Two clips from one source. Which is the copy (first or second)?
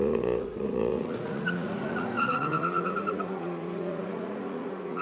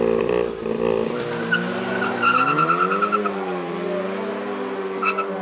first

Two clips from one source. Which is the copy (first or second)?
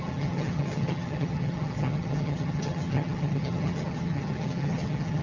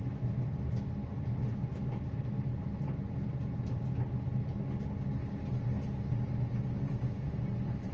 first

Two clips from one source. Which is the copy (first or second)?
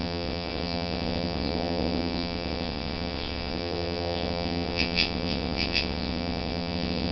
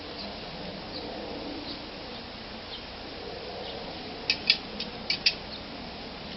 first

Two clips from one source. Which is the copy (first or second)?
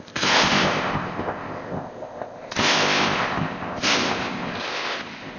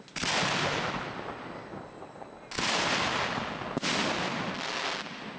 first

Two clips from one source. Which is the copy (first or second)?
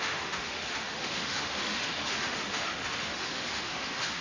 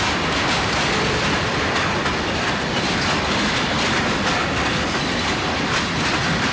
first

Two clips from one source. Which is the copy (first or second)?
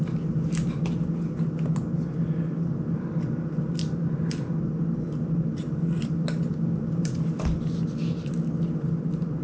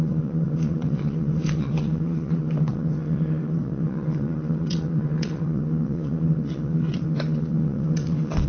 second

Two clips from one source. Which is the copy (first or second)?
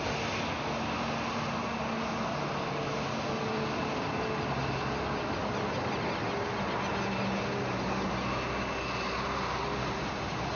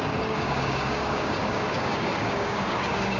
second